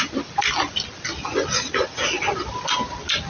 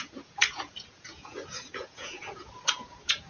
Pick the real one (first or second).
first